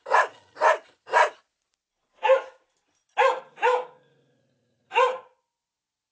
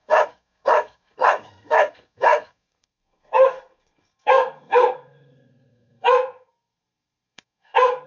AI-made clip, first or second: second